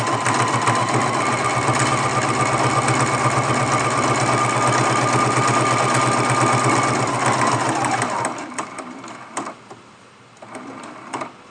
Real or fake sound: real